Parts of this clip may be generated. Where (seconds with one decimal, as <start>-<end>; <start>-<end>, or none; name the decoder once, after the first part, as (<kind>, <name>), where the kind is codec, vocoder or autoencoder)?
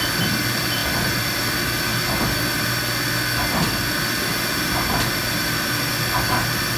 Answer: 4.3-5.9 (vocoder, BigVGAN v2)